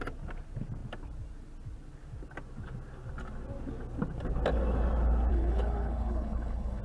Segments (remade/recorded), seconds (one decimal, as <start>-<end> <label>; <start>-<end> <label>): 0.0-5.3 recorded; 5.3-6.8 remade